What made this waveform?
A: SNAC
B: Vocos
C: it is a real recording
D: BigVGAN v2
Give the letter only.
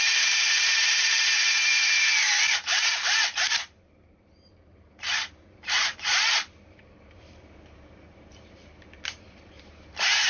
D